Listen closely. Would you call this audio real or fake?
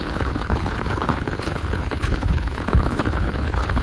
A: fake